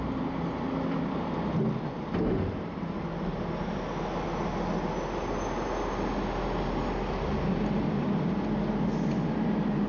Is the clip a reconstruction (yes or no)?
no